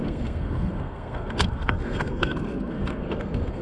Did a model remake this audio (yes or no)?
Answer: yes